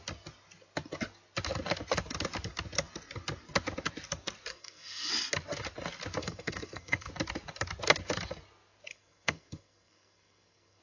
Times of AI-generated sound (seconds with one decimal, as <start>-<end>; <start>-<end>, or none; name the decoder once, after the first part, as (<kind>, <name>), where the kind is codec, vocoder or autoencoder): 4.5-5.1 (codec, SNAC); 6.2-7.1; 8.9-10.8